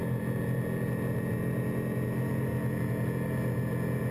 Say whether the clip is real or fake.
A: real